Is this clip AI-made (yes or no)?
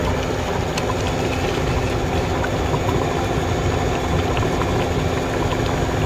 no